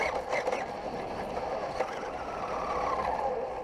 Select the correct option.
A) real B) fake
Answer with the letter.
A